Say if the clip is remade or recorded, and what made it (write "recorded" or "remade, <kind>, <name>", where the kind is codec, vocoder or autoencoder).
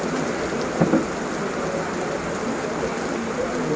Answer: recorded